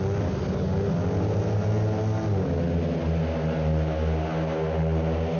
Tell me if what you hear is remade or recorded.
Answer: recorded